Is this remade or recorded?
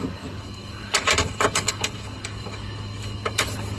remade